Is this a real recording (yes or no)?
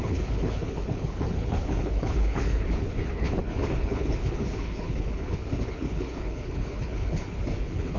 no